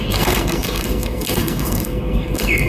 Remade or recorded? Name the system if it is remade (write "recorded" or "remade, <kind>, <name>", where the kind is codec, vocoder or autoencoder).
remade, codec, SNAC